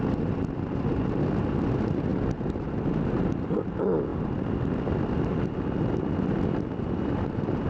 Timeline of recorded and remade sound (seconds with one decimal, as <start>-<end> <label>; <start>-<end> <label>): 0.0-7.7 recorded